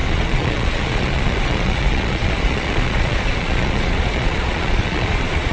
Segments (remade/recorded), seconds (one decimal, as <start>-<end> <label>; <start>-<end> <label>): 0.0-5.5 remade